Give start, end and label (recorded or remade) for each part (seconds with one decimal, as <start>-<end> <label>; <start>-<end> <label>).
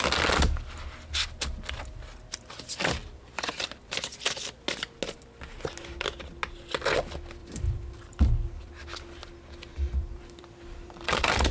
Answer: 0.0-3.0 recorded; 3.0-4.1 remade; 4.1-7.4 recorded; 7.4-8.7 remade; 8.7-9.7 recorded; 9.7-11.5 remade